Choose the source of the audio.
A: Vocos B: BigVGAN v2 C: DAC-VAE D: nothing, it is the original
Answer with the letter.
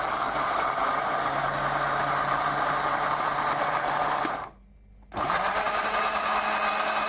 D